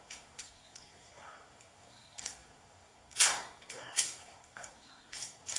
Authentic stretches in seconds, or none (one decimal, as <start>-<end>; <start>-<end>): none